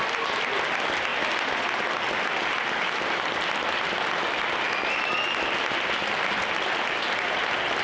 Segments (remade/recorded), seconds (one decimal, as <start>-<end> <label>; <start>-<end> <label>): 0.0-7.8 recorded